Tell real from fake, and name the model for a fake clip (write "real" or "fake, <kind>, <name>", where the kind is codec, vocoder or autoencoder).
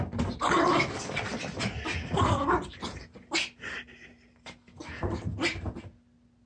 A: real